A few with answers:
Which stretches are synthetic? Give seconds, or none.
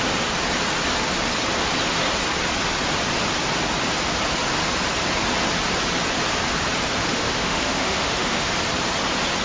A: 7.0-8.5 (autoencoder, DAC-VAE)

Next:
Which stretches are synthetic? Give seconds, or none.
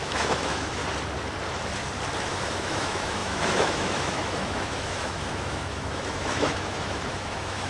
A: 0.0-0.8 (autoencoder, DAC-VAE); 2.2-7.7